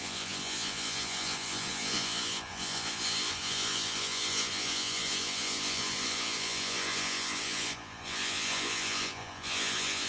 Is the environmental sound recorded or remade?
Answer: remade